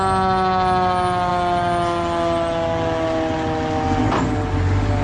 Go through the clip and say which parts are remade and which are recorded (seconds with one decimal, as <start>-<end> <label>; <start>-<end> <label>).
0.0-5.0 recorded